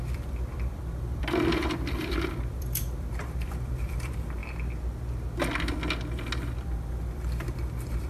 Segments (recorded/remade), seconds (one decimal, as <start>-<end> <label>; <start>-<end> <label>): 0.0-4.4 remade; 4.4-6.4 recorded; 6.4-8.1 remade